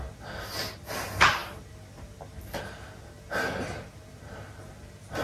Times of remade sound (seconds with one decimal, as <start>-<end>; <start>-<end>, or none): none